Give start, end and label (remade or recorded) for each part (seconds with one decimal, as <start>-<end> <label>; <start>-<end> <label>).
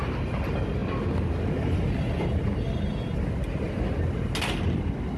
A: 0.0-5.2 recorded